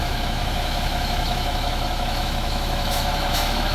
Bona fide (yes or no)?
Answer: no